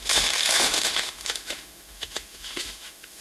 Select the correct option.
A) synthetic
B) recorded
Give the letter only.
A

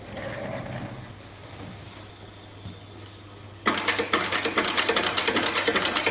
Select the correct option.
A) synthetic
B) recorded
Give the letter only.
B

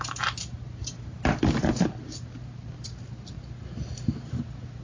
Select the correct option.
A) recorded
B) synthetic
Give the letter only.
A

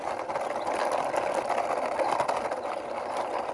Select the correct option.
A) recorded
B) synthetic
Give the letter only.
A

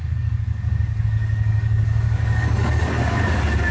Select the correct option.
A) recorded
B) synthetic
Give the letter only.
B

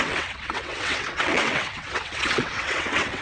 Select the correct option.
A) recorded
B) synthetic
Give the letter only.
B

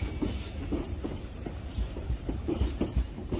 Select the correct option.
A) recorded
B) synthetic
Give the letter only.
B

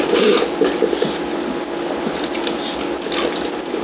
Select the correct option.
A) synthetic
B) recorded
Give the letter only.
B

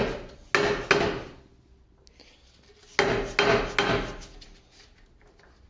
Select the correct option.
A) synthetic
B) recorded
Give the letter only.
B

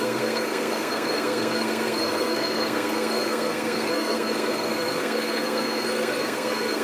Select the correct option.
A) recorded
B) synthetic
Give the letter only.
B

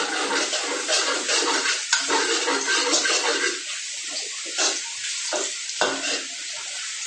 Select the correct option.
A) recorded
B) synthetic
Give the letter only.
A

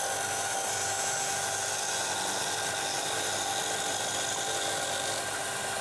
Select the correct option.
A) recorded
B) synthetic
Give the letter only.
A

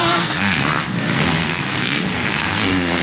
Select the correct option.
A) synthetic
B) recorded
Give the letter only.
A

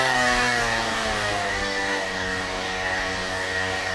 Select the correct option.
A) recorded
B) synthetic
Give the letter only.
B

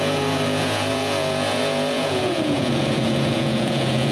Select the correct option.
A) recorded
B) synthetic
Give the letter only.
B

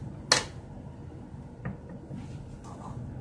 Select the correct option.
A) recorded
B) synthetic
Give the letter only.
A